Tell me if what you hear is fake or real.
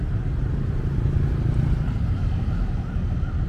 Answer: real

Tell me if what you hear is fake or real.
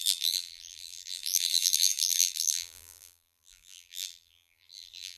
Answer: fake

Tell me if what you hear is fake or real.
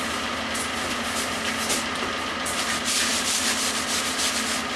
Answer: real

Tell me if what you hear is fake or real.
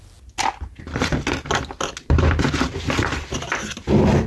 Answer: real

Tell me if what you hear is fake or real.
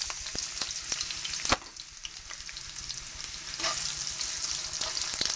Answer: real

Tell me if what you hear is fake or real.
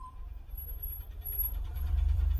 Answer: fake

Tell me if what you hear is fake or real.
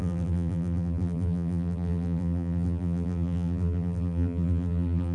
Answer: fake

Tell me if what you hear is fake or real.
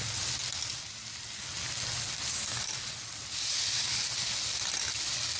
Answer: real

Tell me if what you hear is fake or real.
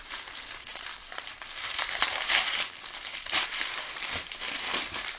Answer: fake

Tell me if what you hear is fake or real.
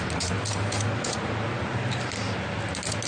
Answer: real